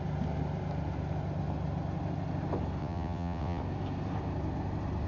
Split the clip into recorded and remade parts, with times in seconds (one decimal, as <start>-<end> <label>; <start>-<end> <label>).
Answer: 0.0-2.8 recorded; 2.8-3.6 remade; 3.6-5.1 recorded